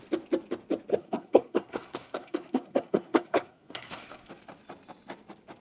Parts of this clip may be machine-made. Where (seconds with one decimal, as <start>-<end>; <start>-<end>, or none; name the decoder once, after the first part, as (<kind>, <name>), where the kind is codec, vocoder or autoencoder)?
0.9-4.3 (codec, SNAC)